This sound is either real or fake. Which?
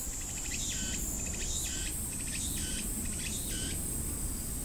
real